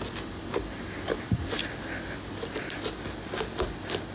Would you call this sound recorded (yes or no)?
yes